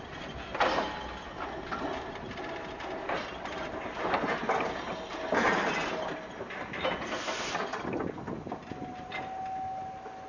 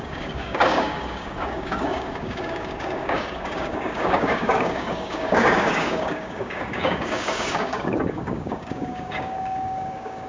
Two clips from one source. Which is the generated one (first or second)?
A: second